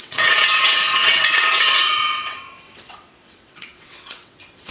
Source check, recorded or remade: remade